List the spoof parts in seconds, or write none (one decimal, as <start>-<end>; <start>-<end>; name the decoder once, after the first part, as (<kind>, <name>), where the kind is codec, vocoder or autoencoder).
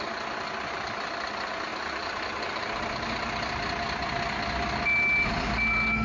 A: none